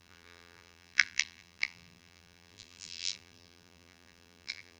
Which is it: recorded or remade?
remade